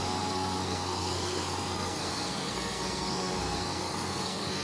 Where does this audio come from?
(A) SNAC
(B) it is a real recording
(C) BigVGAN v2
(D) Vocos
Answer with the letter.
A